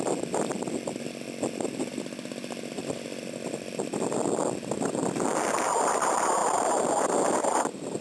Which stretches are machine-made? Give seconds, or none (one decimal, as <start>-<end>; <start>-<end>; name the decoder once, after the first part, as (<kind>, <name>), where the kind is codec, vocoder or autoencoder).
none